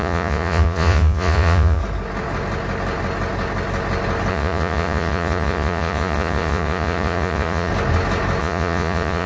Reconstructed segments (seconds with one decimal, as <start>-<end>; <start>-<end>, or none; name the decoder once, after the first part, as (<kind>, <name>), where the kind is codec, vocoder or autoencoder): 0.0-1.8 (vocoder, Vocos); 4.3-7.7; 8.4-9.3